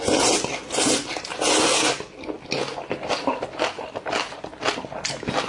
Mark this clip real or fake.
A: real